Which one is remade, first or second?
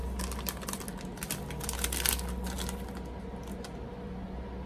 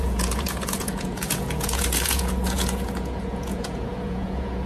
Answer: second